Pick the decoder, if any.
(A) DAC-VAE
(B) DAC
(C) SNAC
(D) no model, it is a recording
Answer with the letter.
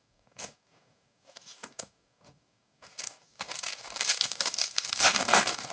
B